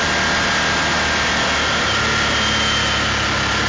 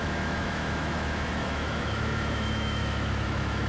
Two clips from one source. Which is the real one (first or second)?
first